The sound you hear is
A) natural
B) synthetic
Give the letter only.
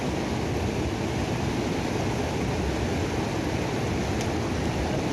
A